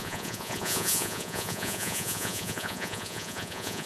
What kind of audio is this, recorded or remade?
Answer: remade